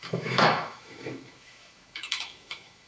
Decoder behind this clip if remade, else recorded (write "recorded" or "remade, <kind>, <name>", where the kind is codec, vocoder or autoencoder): remade, autoencoder, DAC-VAE